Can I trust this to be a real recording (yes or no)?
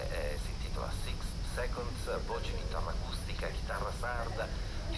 yes